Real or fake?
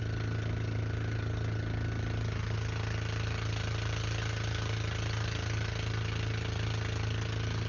real